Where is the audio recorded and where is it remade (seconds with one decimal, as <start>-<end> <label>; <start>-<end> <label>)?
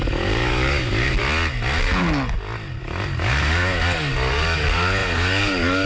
0.0-1.2 remade; 1.2-2.8 recorded; 2.8-5.9 remade